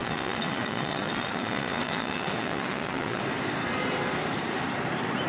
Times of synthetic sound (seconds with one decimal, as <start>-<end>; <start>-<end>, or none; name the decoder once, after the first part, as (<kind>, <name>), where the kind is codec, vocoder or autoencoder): 0.0-3.2 (vocoder, Vocos)